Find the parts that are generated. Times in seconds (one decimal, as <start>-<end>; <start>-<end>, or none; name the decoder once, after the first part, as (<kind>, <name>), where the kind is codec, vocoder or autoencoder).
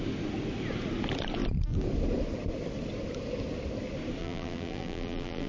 4.2-5.5 (vocoder, BigVGAN v2)